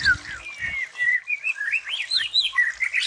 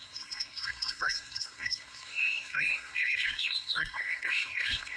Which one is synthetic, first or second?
second